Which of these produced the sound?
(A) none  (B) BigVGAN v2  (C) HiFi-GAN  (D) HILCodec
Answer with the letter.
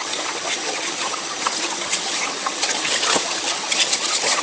C